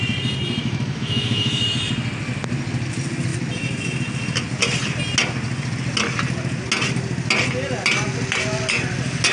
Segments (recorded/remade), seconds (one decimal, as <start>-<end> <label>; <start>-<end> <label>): 0.0-0.6 recorded; 0.6-1.6 remade; 1.6-9.3 recorded